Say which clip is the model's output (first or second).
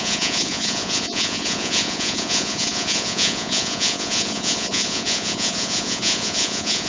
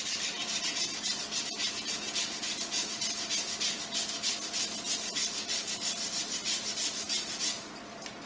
first